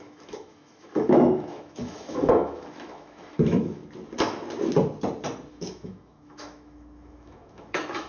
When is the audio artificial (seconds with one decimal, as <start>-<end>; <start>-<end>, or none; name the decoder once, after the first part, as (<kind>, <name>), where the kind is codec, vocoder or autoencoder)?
0.0-3.8 (autoencoder, DAC-VAE); 5.5-8.1